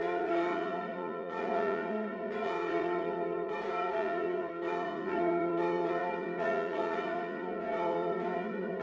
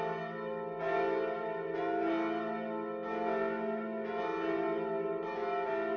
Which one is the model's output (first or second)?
first